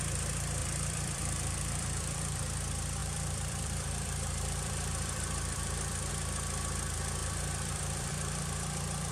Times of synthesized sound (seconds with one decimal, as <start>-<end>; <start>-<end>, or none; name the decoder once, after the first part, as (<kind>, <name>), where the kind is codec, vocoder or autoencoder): 0.6-2.4 (vocoder, BigVGAN v2); 3.0-6.1; 7.2-8.1